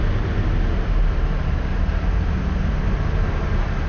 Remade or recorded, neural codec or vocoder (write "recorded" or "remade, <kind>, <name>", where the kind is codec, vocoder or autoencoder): recorded